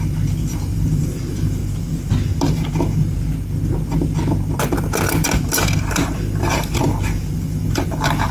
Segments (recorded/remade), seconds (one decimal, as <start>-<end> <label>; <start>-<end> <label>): 0.0-1.6 remade; 1.6-5.9 recorded; 5.9-8.3 remade